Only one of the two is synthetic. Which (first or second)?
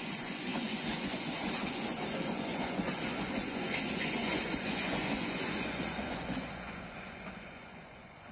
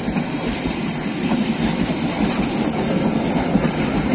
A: first